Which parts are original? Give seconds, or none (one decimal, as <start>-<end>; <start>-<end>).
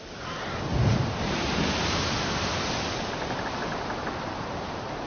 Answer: 0.0-5.1